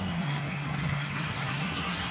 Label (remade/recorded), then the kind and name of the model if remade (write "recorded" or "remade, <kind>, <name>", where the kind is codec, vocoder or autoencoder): remade, codec, SNAC